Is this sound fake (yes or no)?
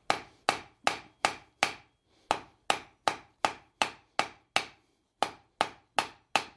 no